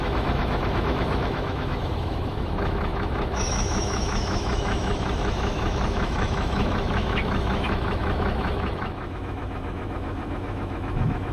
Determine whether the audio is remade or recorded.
remade